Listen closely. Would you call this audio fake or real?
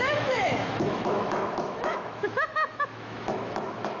fake